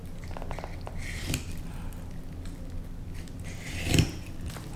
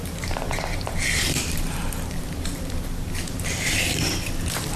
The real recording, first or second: first